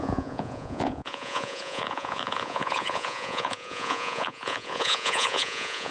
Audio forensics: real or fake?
fake